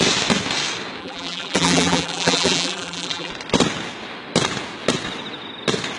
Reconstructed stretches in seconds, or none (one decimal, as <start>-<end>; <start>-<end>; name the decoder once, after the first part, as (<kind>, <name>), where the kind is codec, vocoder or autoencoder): 1.0-3.3 (vocoder, BigVGAN v2)